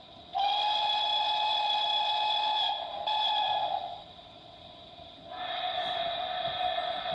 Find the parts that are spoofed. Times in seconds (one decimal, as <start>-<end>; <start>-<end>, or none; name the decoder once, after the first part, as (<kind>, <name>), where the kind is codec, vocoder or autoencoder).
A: none

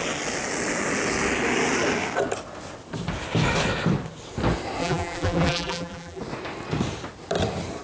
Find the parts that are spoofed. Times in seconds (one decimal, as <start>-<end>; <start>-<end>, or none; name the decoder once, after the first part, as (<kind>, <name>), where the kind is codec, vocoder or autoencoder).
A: 4.8-6.2 (vocoder, BigVGAN v2)

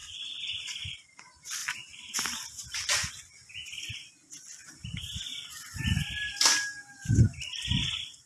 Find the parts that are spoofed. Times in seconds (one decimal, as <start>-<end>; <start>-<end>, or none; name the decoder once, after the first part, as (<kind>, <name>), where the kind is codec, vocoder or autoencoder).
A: 0.0-0.8 (vocoder, BigVGAN v2); 1.6-3.1

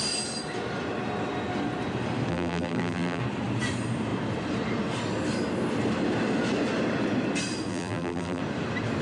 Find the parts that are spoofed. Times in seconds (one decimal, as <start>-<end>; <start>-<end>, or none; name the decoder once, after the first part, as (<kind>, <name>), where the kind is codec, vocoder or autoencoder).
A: 2.3-3.2 (vocoder, BigVGAN v2); 7.7-8.4

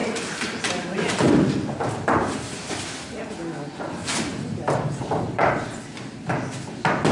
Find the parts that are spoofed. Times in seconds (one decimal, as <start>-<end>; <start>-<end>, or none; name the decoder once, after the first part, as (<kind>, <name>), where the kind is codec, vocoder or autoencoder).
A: 0.0-2.9 (vocoder, BigVGAN v2); 4.0-5.5

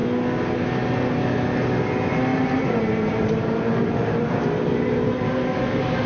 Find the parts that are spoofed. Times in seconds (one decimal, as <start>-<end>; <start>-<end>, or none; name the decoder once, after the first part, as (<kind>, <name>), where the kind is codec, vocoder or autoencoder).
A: 2.3-5.1 (vocoder, BigVGAN v2)